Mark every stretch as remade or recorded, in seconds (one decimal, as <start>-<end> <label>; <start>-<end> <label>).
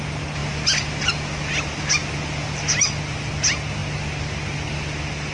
0.0-5.3 recorded